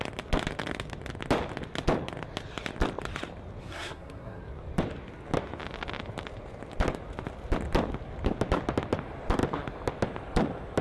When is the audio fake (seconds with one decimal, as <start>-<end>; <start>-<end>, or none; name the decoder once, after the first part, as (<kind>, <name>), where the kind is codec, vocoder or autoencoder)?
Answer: 3.6-4.4 (codec, SNAC)